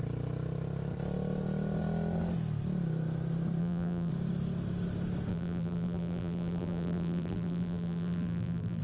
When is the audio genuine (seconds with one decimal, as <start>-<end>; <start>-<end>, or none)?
0.0-3.6; 4.1-5.3